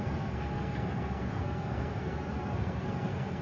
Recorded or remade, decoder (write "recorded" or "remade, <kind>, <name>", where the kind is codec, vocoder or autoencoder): remade, codec, SNAC